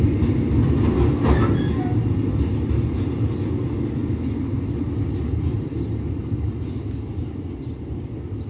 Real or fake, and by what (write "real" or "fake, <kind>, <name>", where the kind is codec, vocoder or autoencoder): real